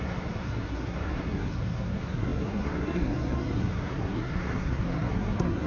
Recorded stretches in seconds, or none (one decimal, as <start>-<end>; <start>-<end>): none